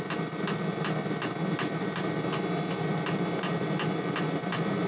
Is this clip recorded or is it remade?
recorded